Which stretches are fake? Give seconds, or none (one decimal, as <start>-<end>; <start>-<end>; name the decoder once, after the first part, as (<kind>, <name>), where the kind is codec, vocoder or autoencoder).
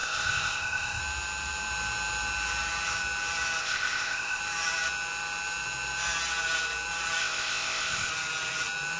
0.0-1.0 (codec, ZipCodec); 3.6-4.4; 7.2-8.1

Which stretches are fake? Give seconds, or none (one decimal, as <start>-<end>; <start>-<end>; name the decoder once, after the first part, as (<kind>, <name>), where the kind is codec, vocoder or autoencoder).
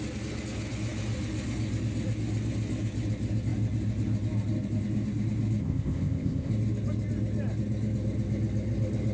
5.6-6.5 (codec, ZipCodec)